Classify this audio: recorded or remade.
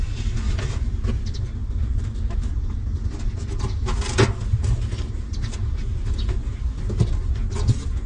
recorded